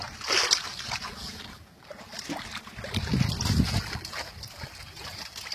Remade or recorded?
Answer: recorded